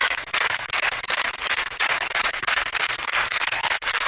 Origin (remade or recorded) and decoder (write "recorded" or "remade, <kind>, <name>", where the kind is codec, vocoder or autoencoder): remade, codec, SNAC